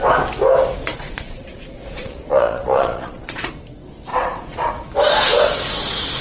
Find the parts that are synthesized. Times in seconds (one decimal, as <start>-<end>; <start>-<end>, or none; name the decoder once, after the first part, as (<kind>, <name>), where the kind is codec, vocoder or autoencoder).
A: 0.8-3.5 (vocoder, Vocos); 4.1-4.7